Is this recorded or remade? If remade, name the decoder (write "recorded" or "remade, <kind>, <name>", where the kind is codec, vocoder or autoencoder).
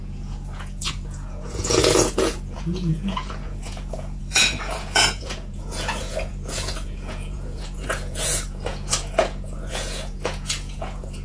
remade, vocoder, Vocos